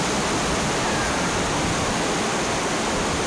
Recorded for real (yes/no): yes